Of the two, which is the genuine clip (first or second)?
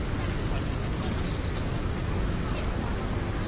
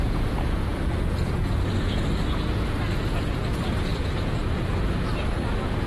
first